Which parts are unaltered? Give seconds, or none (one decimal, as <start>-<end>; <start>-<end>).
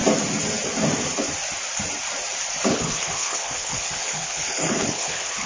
0.0-2.7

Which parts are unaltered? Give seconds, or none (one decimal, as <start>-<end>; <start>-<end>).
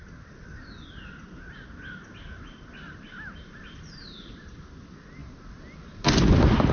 0.0-6.7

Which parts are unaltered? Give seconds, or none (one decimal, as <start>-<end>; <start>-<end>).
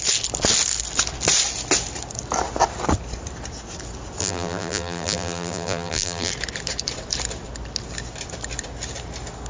0.0-4.2; 6.3-9.5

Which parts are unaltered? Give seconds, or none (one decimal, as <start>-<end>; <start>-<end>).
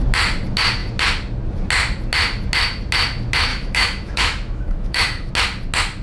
0.0-3.5; 5.3-6.0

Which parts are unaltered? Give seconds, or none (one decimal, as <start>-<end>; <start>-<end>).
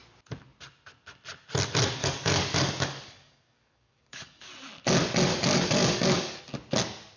0.0-2.0; 4.5-5.3; 6.4-7.2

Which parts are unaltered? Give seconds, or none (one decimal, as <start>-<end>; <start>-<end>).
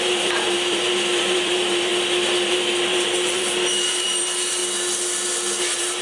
1.9-2.5; 4.6-5.6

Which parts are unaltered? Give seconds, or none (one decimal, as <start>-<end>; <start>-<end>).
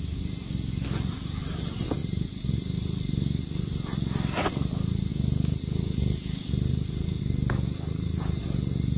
0.0-5.1; 7.2-9.0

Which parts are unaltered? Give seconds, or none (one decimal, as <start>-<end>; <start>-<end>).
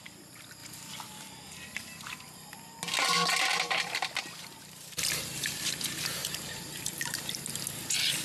0.0-3.5; 5.6-6.2; 7.4-8.2